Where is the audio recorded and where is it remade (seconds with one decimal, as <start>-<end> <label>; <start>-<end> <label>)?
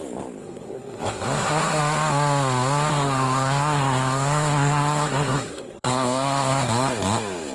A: 0.0-0.4 recorded; 0.4-1.8 remade; 1.8-2.9 recorded; 2.9-6.7 remade; 6.7-7.5 recorded